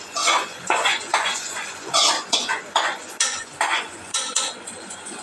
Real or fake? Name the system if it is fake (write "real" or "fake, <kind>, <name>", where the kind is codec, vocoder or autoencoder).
fake, vocoder, Vocos